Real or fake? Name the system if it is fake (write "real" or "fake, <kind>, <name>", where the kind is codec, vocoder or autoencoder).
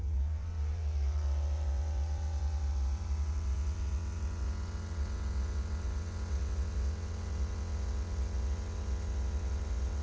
fake, vocoder, WaveNeXt